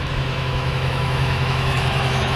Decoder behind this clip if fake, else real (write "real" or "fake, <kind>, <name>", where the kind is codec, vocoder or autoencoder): fake, autoencoder, DAC-VAE